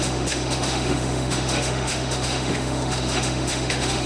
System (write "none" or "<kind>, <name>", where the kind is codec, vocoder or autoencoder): autoencoder, DAC-VAE